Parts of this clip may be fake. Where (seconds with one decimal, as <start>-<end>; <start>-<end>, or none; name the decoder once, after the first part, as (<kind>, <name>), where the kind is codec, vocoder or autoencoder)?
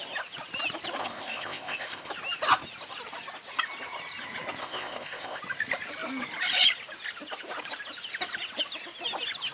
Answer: 1.0-2.1 (codec, ZipCodec); 4.6-5.4